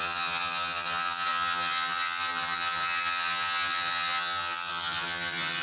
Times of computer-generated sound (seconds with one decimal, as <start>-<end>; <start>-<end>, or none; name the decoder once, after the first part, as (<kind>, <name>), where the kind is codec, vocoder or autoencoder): 0.0-5.6 (vocoder, HiFi-GAN)